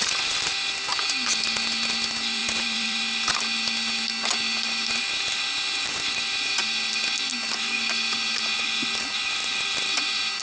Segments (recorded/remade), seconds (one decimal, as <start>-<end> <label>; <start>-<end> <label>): 0.0-2.4 recorded; 2.4-3.0 remade; 3.0-9.4 recorded; 9.4-10.0 remade; 10.0-10.4 recorded